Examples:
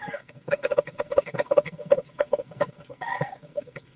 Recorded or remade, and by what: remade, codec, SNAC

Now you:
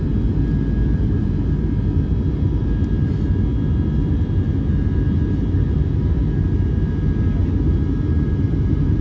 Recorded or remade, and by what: recorded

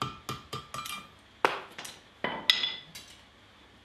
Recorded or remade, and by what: recorded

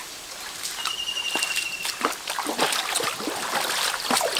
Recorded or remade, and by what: recorded